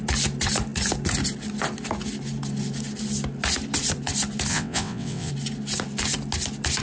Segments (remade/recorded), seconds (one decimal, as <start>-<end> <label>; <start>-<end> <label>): 0.0-4.5 recorded; 4.5-5.3 remade; 5.3-6.8 recorded